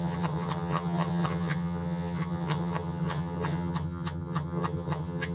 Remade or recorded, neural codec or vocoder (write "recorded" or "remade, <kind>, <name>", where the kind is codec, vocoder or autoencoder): remade, vocoder, HiFi-GAN